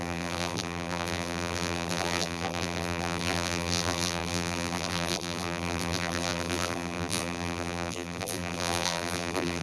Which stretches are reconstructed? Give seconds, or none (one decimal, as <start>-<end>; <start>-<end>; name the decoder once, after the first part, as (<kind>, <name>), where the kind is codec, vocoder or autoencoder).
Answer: 0.0-9.6 (vocoder, BigVGAN v2)